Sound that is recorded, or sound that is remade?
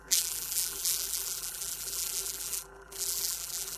remade